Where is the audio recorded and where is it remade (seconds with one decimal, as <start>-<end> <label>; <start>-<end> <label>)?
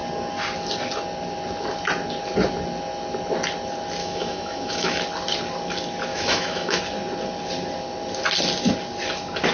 0.0-4.0 recorded; 4.0-5.0 remade; 5.0-6.1 recorded; 6.1-6.8 remade; 6.8-9.5 recorded